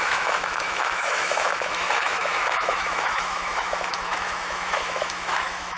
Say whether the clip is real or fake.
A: fake